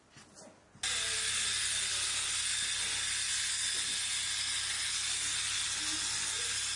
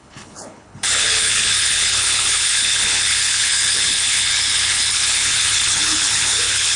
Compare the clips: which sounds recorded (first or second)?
first